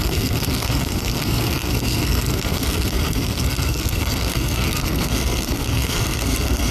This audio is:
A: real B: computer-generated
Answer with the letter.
B